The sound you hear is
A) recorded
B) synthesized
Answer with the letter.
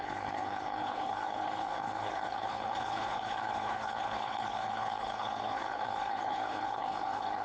B